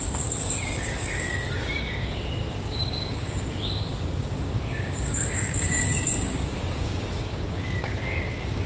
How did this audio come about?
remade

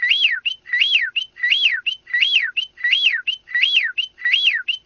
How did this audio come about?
recorded